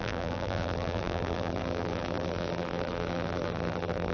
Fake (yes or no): yes